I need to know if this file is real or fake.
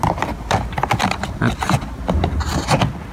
real